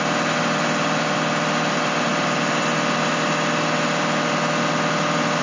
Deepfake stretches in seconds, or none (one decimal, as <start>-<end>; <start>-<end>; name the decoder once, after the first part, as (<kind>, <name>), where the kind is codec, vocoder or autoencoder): none